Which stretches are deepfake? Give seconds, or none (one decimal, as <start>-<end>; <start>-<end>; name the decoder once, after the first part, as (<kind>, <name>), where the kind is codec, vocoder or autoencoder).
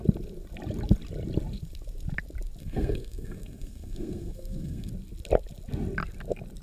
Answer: 2.6-4.9 (codec, SNAC)